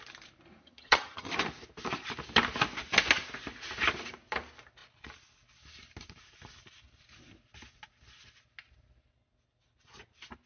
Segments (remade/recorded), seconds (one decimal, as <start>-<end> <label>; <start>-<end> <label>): 0.0-0.6 recorded; 0.6-1.3 remade; 1.3-10.5 recorded